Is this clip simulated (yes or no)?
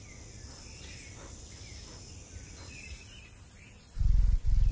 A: no